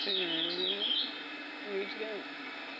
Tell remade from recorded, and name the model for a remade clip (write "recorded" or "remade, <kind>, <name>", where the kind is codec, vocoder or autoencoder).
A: recorded